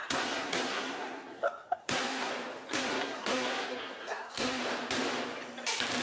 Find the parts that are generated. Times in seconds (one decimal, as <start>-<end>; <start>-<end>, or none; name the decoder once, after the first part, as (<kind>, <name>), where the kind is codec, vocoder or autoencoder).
0.0-2.3 (codec, SNAC); 2.7-4.6